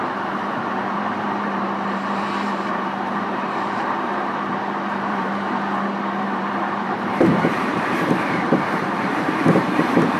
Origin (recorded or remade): remade